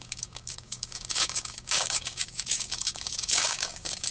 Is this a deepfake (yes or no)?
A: yes